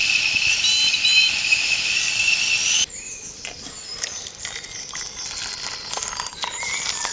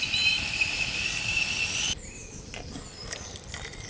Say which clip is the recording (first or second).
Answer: first